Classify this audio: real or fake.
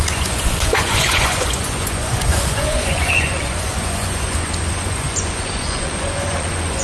fake